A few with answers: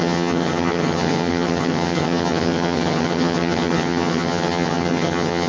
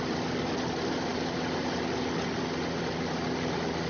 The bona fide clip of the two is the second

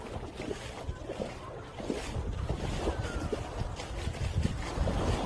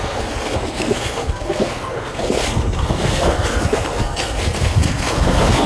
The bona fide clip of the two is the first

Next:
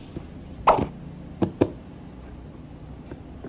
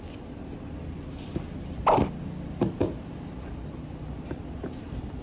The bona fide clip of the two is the first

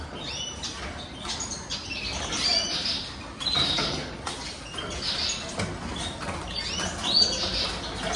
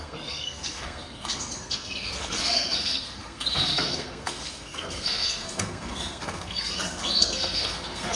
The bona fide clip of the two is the first